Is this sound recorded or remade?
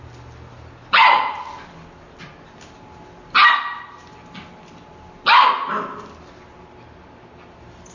recorded